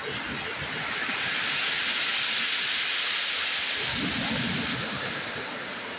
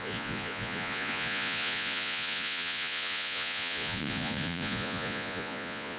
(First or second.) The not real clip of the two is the second